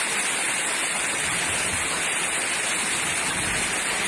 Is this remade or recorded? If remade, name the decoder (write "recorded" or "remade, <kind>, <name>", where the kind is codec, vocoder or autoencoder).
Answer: recorded